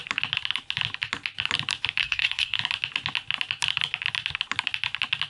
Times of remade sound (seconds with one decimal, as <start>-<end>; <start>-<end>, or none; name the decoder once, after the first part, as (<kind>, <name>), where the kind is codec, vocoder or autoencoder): 2.0-2.6 (codec, SNAC)